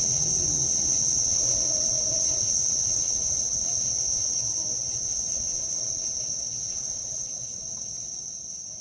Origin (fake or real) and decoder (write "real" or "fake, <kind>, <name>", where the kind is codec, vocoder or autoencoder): fake, vocoder, WaveNeXt